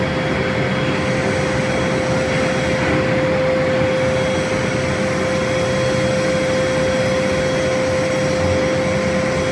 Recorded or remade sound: recorded